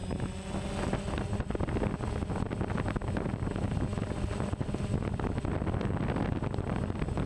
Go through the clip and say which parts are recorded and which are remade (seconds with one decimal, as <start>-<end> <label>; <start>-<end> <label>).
0.0-7.3 recorded

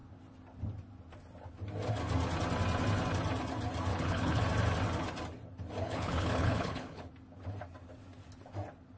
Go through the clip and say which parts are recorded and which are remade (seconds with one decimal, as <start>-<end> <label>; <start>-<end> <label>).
0.0-3.9 recorded; 3.9-4.4 remade; 4.4-5.8 recorded; 5.8-7.1 remade; 7.1-9.0 recorded